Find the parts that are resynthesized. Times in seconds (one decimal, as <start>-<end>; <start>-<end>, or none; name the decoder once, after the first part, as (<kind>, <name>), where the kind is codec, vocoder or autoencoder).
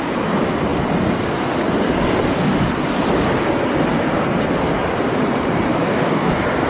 5.7-6.3 (codec, DAC)